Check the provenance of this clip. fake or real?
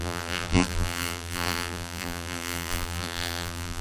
fake